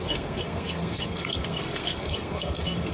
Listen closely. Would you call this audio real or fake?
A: fake